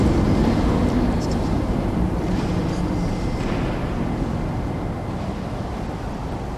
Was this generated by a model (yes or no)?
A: no